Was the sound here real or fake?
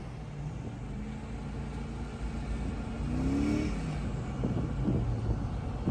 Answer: real